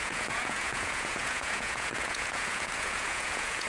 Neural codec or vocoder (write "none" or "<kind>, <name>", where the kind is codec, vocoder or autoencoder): vocoder, Vocos